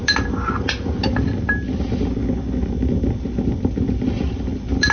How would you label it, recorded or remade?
recorded